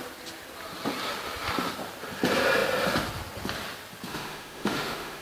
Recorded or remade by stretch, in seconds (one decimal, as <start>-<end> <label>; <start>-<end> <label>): 0.0-4.1 recorded; 4.1-5.2 remade